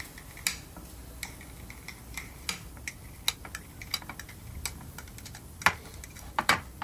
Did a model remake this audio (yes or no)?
no